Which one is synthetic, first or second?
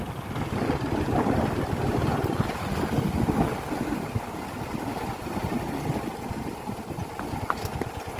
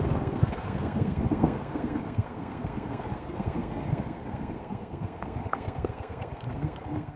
second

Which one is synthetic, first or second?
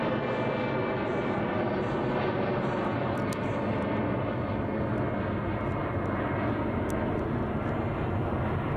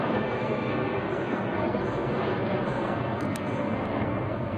second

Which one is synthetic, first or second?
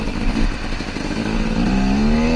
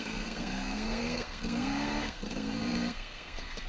second